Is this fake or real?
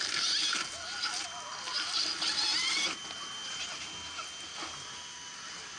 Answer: real